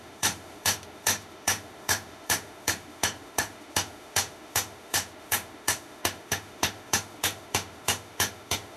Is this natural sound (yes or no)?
no